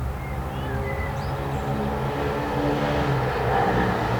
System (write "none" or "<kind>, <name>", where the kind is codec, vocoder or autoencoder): none